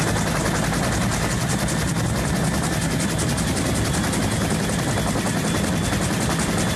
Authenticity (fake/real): real